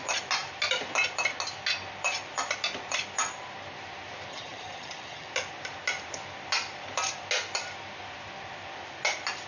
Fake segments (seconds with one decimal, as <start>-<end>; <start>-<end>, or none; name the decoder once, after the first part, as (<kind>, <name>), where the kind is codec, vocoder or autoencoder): 4.3-5.3 (vocoder, HiFi-GAN)